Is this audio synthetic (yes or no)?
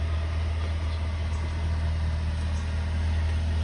no